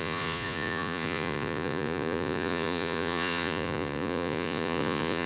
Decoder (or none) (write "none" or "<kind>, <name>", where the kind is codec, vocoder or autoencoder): vocoder, Vocos